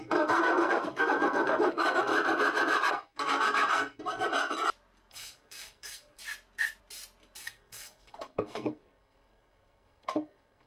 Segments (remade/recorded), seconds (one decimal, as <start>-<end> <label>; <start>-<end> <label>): 0.0-2.1 remade; 2.1-2.9 recorded; 2.9-4.3 remade; 4.3-5.1 recorded; 5.1-6.2 remade; 6.2-7.4 recorded; 7.4-10.7 remade